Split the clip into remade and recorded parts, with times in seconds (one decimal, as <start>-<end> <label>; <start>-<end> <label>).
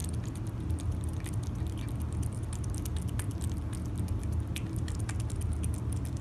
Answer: 0.0-6.2 recorded